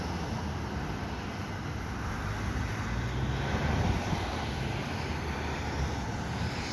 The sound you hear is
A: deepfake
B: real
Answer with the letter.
B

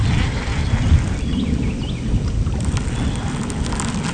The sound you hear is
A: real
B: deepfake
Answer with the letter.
A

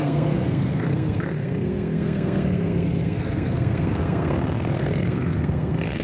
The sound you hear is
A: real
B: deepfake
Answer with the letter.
B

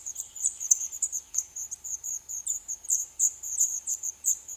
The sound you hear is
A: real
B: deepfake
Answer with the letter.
B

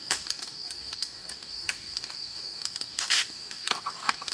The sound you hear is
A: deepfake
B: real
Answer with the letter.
A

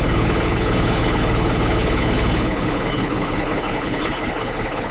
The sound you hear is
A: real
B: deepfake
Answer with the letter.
B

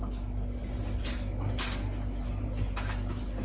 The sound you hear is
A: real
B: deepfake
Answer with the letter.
A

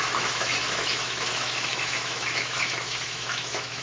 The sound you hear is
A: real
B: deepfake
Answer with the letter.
B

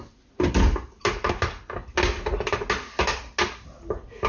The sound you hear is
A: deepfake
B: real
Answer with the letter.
B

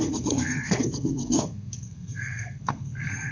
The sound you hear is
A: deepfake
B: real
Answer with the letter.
A